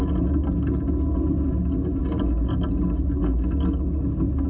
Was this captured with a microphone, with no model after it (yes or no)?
yes